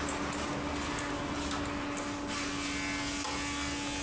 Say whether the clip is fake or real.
real